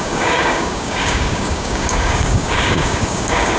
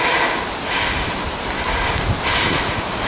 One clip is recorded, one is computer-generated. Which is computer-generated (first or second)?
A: first